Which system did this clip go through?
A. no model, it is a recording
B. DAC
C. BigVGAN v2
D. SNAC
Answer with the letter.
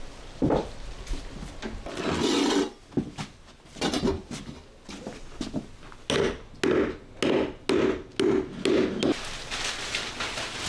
A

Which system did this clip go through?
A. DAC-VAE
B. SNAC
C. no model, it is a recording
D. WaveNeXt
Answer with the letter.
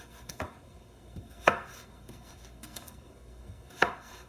B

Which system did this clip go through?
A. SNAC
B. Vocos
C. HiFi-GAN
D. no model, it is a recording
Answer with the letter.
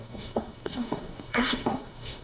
A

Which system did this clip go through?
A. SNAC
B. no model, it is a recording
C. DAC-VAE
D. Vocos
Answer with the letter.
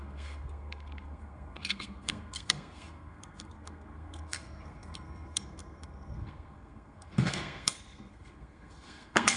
A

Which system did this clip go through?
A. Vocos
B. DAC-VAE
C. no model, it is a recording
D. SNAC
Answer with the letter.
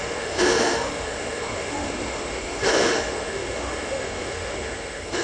B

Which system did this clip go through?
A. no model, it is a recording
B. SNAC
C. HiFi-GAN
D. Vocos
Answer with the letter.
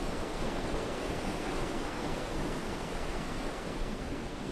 B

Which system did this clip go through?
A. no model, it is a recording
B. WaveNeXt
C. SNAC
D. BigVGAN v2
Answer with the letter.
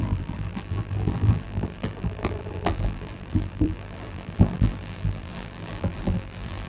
D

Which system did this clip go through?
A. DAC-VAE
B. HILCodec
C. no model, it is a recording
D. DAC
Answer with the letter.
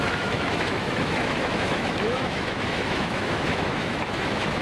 A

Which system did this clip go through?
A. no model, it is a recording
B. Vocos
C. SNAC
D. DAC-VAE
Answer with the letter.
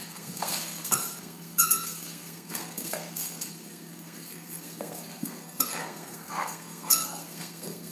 C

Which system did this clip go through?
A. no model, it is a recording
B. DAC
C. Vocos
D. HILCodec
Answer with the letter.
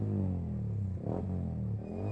A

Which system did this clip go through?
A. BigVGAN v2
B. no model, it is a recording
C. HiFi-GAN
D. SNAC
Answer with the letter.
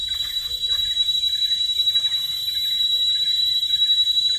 B